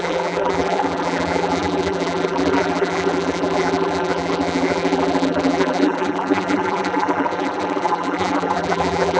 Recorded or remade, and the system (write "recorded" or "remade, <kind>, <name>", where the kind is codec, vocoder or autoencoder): remade, vocoder, BigVGAN v2